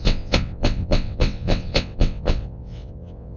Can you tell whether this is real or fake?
fake